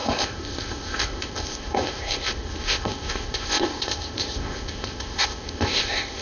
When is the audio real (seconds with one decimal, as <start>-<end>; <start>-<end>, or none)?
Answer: none